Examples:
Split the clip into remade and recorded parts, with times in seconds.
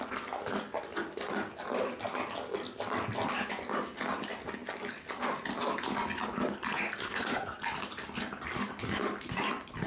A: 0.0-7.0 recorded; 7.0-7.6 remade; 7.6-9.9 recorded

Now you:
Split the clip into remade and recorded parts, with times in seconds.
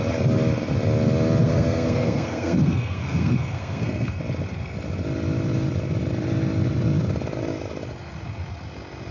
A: 0.0-1.4 recorded; 1.4-4.2 remade; 4.2-9.1 recorded